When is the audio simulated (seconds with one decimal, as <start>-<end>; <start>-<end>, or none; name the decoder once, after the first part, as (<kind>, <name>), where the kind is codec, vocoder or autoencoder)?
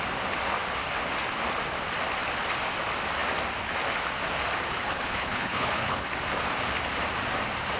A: 4.7-6.1 (codec, HILCodec)